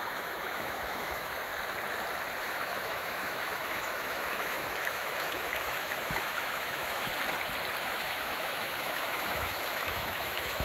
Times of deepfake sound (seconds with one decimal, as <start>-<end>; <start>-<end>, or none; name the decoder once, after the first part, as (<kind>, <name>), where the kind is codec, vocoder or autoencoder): 0.0-1.5 (autoencoder, DAC-VAE); 2.4-7.1; 7.8-10.6